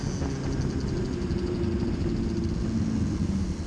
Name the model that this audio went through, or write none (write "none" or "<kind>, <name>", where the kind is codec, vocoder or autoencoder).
none